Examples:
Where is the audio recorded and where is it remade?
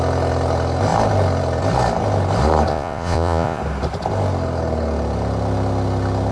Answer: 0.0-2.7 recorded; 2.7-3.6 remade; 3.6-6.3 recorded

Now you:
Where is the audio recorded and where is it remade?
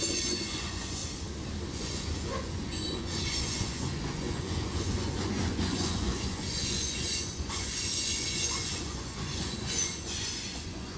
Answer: 0.0-1.0 remade; 1.0-1.7 recorded; 1.7-11.0 remade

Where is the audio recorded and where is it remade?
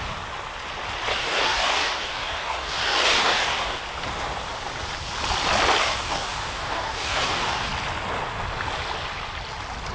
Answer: 0.0-1.1 recorded; 1.1-3.8 remade; 3.8-5.8 recorded; 5.8-7.7 remade; 7.7-9.9 recorded